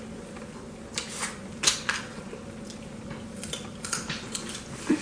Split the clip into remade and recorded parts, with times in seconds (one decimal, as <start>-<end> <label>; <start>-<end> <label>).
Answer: 0.0-5.0 recorded